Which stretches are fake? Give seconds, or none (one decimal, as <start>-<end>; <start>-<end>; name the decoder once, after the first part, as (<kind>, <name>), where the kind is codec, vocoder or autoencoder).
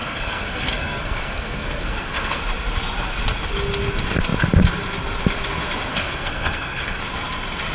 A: 0.0-2.4 (codec, SNAC); 5.9-7.0